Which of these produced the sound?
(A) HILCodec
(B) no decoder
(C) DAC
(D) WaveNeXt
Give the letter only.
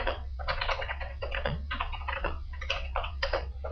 D